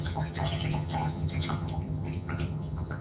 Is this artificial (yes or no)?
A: yes